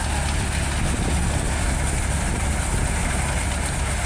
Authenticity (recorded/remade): recorded